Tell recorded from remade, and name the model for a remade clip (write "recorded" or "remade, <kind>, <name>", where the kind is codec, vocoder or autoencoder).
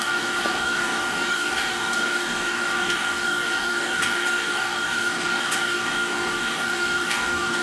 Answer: remade, codec, DAC